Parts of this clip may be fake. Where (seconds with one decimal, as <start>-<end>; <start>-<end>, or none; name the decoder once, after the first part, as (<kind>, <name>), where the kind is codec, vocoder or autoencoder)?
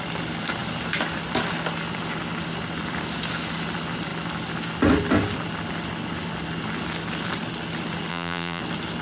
8.1-8.6 (vocoder, BigVGAN v2)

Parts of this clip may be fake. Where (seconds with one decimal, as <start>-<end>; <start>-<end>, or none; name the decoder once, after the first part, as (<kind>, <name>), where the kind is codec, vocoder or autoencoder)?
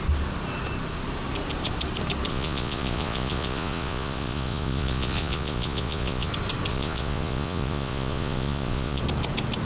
2.3-6.3 (vocoder, Vocos); 6.7-9.0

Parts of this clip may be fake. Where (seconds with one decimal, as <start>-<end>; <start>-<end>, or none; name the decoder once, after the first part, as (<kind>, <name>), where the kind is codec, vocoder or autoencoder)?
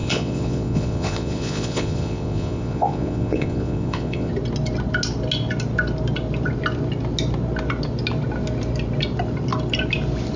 0.0-4.3 (vocoder, Vocos)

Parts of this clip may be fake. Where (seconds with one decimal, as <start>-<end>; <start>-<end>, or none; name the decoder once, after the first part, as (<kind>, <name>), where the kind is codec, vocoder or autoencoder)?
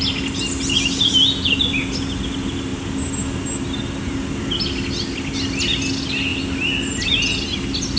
none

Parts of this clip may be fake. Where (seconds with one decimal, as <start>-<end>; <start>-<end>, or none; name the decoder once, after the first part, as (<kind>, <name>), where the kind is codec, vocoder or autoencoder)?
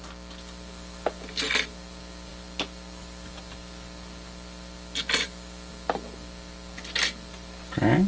none